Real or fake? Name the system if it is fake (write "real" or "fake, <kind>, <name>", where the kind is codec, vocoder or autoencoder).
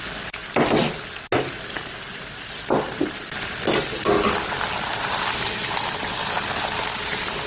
real